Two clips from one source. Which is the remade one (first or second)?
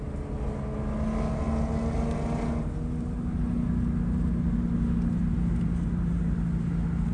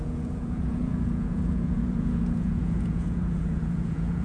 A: second